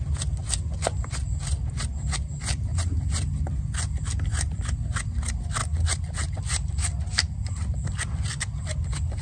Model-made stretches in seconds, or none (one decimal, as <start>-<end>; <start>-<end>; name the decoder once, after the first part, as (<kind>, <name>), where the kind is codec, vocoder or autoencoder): none